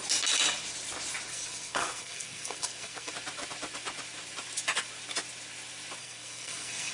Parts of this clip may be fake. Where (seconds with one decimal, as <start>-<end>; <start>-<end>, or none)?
1.3-3.1; 6.0-6.9